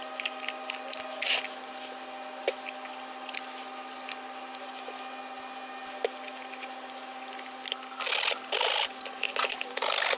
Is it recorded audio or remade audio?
recorded